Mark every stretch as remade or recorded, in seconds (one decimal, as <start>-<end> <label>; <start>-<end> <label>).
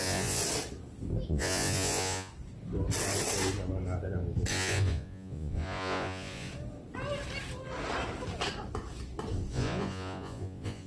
0.0-0.4 remade; 0.4-1.3 recorded; 1.3-2.3 remade; 2.3-4.5 recorded; 4.5-6.5 remade; 6.5-9.5 recorded; 9.5-10.9 remade